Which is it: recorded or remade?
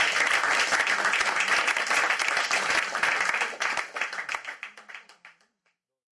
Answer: recorded